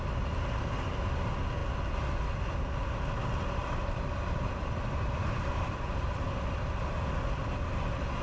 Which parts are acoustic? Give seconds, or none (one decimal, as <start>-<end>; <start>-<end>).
0.0-3.6; 5.8-8.2